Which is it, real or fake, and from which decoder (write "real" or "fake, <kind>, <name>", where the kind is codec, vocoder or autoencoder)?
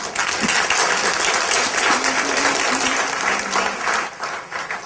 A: real